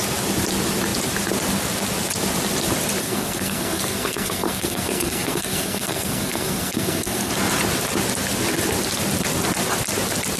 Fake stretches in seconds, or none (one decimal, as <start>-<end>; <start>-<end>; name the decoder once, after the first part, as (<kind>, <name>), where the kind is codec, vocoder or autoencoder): 3.0-7.3 (codec, SNAC)